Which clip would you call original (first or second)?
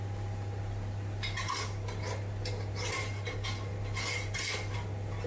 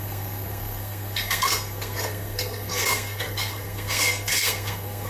first